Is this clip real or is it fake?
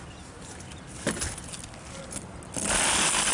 real